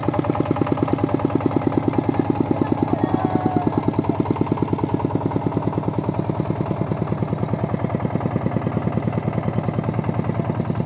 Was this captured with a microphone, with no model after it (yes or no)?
yes